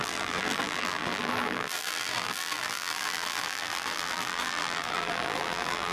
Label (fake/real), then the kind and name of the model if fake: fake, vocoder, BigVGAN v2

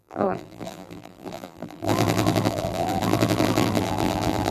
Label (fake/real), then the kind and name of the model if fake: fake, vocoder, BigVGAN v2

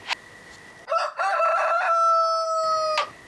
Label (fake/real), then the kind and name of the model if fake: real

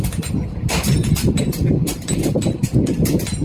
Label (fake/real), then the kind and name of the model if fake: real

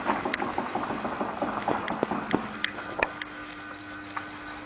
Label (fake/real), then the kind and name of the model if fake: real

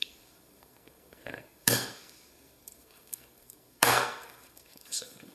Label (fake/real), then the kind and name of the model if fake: fake, codec, SNAC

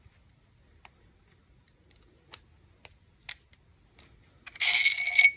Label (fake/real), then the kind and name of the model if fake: real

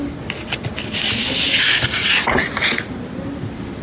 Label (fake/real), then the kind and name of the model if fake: real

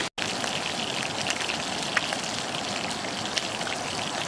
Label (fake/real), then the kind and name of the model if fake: real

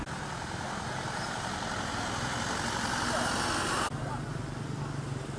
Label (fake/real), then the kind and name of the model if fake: real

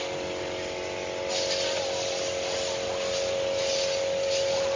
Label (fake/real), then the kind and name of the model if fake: real